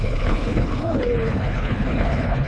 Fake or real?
fake